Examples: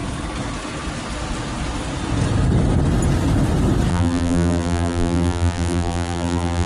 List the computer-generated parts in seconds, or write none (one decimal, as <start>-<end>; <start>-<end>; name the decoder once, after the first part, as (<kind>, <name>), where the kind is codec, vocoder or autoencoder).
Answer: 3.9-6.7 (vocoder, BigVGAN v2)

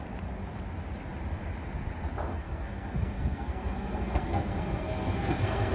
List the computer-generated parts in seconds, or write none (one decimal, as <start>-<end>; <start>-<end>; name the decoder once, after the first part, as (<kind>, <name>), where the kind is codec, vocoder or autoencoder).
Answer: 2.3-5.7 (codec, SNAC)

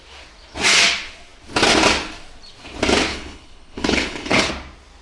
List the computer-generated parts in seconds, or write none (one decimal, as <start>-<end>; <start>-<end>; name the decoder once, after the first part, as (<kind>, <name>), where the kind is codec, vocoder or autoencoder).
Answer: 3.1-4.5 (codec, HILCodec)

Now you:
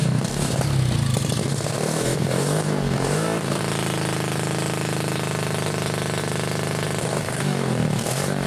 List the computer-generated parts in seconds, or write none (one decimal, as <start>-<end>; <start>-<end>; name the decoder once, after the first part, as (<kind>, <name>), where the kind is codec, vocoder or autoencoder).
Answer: 0.0-0.6 (codec, DAC); 1.4-3.6; 7.0-8.5

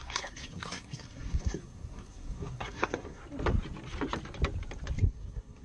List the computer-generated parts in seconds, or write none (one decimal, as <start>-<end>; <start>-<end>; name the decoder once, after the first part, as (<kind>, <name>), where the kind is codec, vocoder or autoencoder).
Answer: 0.0-3.2 (codec, SNAC); 5.0-5.6

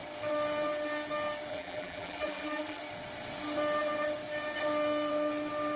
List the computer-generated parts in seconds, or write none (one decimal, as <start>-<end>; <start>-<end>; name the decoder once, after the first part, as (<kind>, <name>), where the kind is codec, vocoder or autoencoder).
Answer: 1.5-2.8 (vocoder, BigVGAN v2)

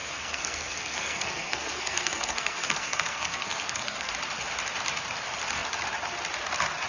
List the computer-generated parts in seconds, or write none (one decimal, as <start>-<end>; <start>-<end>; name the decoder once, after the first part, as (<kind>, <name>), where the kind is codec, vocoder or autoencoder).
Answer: 0.0-4.1 (codec, SNAC)